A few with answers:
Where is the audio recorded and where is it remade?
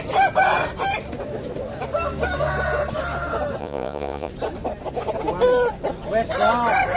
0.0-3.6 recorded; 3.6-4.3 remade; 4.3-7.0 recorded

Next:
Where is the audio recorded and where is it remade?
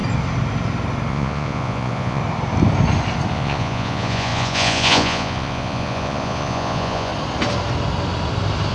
0.0-1.1 recorded; 1.1-2.2 remade; 2.2-3.3 recorded; 3.3-7.1 remade; 7.1-8.7 recorded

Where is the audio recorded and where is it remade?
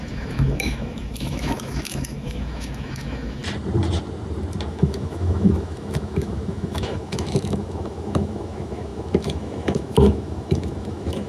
0.0-3.4 remade; 3.4-4.7 recorded; 4.7-11.3 remade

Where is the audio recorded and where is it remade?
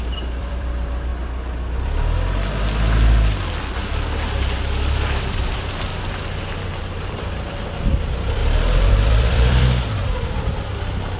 0.0-1.1 remade; 1.1-4.6 recorded; 4.6-5.9 remade; 5.9-7.1 recorded; 7.1-8.4 remade; 8.4-8.9 recorded; 8.9-11.2 remade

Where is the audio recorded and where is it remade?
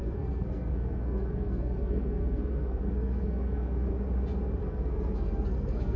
0.0-3.9 remade; 3.9-4.6 recorded; 4.6-6.0 remade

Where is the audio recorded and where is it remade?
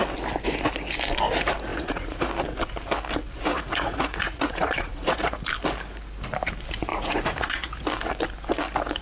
0.0-1.7 recorded; 1.7-2.3 remade; 2.3-3.5 recorded; 3.5-5.4 remade; 5.4-6.9 recorded; 6.9-7.8 remade; 7.8-9.0 recorded